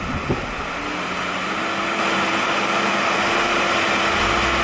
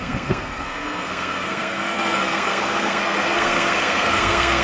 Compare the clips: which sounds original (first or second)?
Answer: first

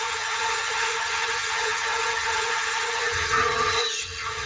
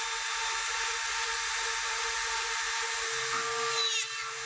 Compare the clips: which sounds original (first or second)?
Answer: second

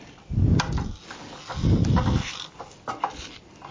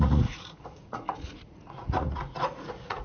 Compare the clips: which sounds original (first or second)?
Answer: first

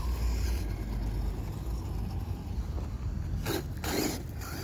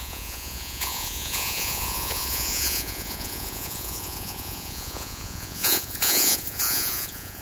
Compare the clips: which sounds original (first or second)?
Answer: first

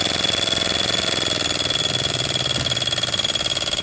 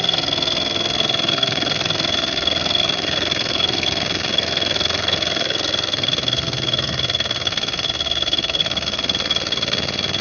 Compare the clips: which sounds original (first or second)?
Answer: first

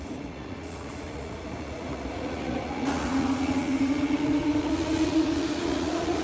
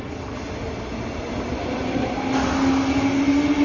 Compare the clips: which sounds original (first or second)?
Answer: second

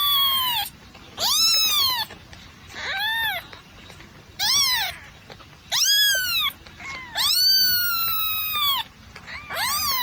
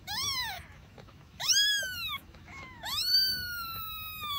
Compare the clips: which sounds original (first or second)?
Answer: first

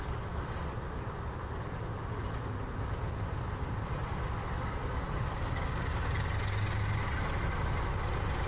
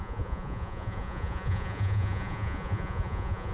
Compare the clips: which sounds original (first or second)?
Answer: first